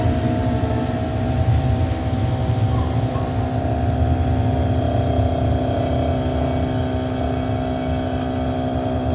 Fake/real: real